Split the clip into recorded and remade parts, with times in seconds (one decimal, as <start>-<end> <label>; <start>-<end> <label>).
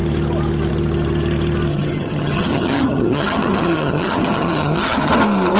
0.0-1.7 recorded; 1.7-5.1 remade; 5.1-5.6 recorded